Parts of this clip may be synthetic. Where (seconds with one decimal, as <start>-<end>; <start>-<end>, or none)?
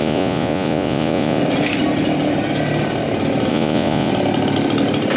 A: 0.0-1.4; 3.5-4.1